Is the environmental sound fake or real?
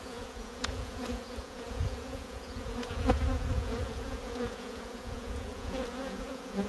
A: fake